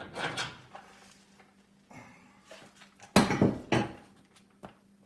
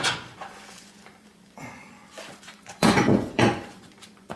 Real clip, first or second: first